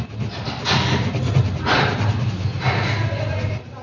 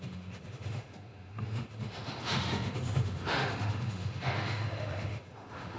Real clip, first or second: first